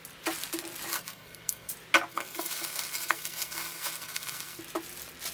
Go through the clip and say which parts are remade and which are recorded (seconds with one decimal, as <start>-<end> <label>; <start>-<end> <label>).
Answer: 0.0-0.9 recorded; 0.9-1.7 remade; 1.7-2.1 recorded; 2.1-4.6 remade; 4.6-5.3 recorded